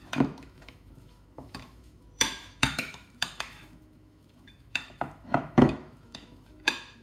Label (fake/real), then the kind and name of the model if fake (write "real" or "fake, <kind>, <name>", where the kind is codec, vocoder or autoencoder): fake, autoencoder, DAC-VAE